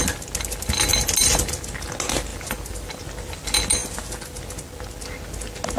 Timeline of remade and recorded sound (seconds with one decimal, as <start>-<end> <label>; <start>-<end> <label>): 0.0-2.3 recorded; 2.3-3.0 remade; 3.0-3.8 recorded; 3.8-4.4 remade; 4.4-5.8 recorded